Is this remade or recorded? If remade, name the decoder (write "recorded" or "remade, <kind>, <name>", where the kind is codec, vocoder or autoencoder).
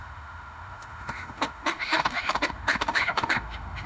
remade, autoencoder, DAC-VAE